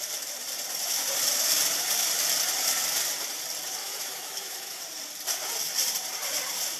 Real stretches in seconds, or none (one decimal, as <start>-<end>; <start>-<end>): 0.0-3.8; 4.8-6.8